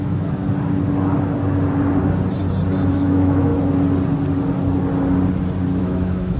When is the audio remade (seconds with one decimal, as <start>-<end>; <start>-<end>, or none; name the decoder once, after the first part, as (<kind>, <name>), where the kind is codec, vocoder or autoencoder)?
0.0-0.4 (autoencoder, DAC-VAE); 2.9-3.5; 5.8-6.4

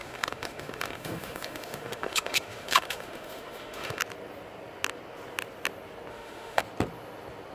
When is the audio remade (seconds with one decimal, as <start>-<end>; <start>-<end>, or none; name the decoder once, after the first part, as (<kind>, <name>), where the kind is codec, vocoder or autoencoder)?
0.0-4.0 (autoencoder, DAC-VAE); 6.1-6.6

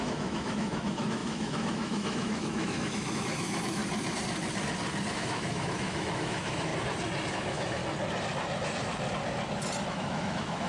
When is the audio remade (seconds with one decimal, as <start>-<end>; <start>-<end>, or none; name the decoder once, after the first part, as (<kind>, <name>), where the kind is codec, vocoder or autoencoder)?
0.0-3.8 (autoencoder, DAC-VAE); 5.1-6.7; 7.3-7.8; 9.9-10.7

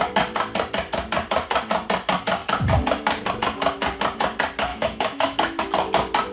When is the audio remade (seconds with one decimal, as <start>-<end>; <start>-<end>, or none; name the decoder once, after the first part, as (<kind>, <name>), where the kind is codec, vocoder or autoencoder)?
4.7-5.6 (autoencoder, DAC-VAE)

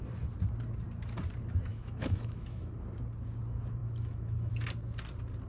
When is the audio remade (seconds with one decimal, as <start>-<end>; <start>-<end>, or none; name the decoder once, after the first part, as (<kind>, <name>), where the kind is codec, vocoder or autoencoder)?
1.7-2.7 (autoencoder, DAC-VAE); 3.8-4.5

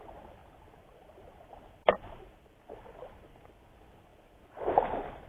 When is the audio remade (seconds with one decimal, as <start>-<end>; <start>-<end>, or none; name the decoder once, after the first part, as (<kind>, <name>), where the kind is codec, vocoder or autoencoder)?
none

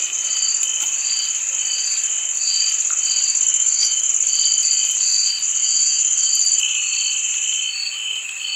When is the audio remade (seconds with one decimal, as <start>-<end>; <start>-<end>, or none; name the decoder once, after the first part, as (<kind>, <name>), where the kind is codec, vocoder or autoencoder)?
3.5-4.1 (autoencoder, DAC-VAE); 5.6-6.3

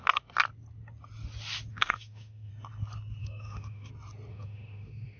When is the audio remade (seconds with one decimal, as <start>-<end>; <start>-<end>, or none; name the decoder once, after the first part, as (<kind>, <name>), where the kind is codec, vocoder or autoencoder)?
1.7-2.5 (autoencoder, DAC-VAE); 3.2-3.9; 4.3-5.2